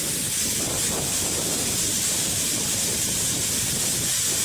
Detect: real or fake real